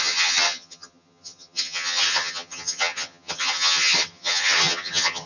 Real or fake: fake